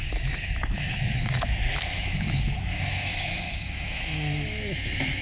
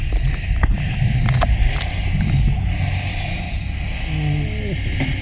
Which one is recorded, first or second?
second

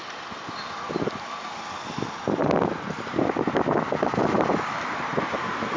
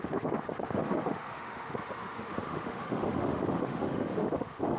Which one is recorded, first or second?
first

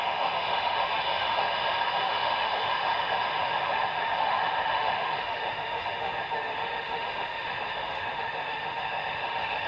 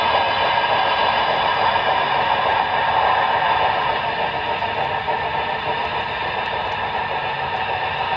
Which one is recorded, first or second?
second